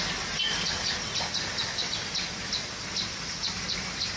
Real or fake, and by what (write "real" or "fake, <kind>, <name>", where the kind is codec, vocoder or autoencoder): real